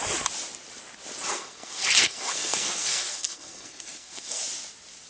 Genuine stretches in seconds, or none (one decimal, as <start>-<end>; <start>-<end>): 0.0-1.3; 4.4-5.1